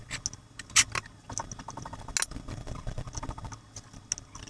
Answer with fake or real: real